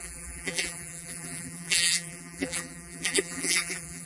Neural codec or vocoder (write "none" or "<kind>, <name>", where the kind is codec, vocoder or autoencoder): vocoder, BigVGAN v2